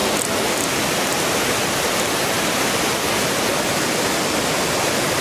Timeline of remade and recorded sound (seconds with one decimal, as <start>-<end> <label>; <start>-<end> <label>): 0.0-5.2 recorded